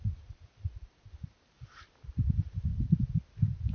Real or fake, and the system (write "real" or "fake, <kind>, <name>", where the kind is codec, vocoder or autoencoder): fake, vocoder, BigVGAN v2